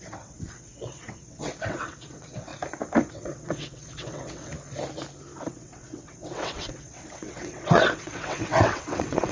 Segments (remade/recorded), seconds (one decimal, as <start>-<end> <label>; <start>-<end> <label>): 0.0-2.5 remade; 2.5-3.1 recorded; 3.1-4.5 remade; 4.5-5.4 recorded; 5.4-9.3 remade